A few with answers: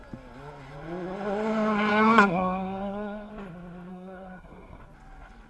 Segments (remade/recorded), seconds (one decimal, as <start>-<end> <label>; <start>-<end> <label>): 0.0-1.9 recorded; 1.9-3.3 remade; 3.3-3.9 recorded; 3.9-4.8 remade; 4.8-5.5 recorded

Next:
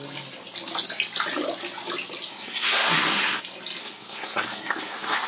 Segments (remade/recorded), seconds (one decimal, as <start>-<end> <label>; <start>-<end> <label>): 0.0-2.3 recorded; 2.3-3.4 remade; 3.4-3.8 recorded; 3.8-5.3 remade

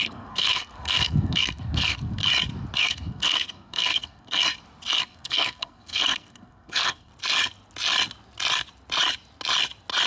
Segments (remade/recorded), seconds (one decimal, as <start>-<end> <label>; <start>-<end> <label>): 0.0-2.2 remade; 2.2-2.8 recorded; 2.8-4.4 remade; 4.4-5.0 recorded; 5.0-7.1 remade; 7.1-10.1 recorded

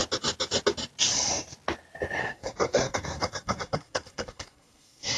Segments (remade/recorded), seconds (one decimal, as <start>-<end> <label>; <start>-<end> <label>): 0.0-2.2 recorded; 2.2-5.2 remade